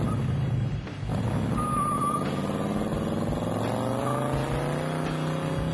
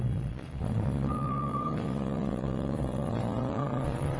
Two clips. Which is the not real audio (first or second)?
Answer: second